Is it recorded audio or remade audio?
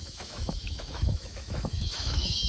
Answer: remade